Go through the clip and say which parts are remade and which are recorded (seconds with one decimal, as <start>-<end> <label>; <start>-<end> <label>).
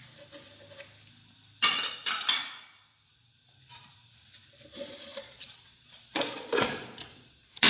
0.0-5.1 recorded; 5.1-7.7 remade